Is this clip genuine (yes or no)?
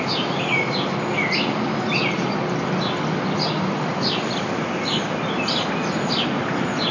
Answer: yes